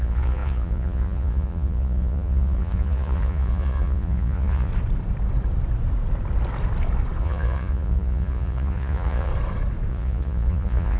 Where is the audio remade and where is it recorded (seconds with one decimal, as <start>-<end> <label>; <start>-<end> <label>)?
0.0-4.7 remade; 4.7-7.2 recorded; 7.2-9.3 remade; 9.3-9.9 recorded; 9.9-11.0 remade